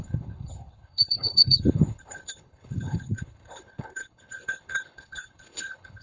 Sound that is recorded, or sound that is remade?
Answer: remade